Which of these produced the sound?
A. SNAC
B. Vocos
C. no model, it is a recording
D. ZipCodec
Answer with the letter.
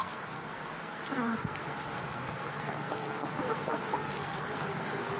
A